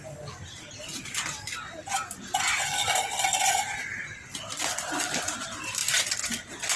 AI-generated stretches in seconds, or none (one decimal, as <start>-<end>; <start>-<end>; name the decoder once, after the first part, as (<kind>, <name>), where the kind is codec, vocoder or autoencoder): 0.9-1.8 (vocoder, BigVGAN v2)